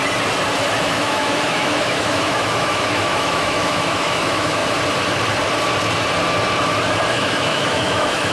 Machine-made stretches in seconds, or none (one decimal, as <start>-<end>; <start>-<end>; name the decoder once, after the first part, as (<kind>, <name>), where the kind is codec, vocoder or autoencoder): 0.8-4.6 (autoencoder, DAC-VAE); 7.1-8.3